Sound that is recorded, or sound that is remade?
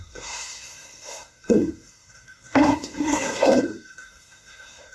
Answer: remade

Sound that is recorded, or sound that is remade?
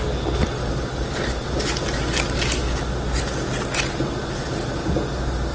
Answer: recorded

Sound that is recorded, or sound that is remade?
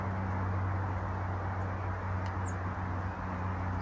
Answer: recorded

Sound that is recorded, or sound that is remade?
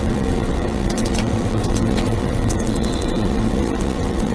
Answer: remade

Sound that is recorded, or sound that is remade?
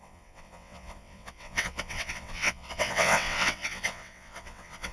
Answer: remade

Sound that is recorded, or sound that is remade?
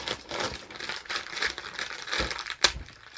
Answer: remade